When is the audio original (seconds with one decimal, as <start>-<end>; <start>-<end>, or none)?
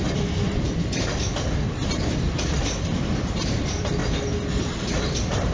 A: 4.0-4.5